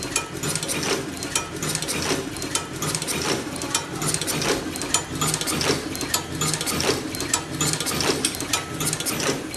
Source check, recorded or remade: recorded